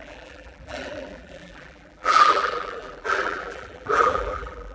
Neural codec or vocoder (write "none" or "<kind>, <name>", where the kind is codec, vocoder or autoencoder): vocoder, BigVGAN v2